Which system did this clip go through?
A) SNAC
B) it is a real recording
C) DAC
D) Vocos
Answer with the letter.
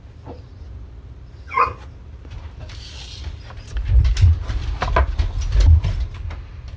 B